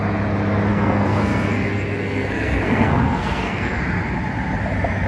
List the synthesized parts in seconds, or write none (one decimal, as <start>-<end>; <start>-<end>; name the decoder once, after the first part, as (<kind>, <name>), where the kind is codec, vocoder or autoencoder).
0.7-3.8 (codec, SNAC)